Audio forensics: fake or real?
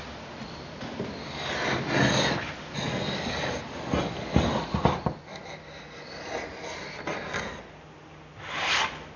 real